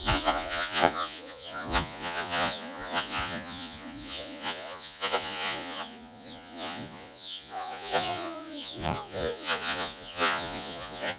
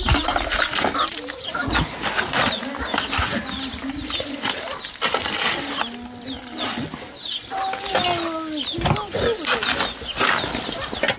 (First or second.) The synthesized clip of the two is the first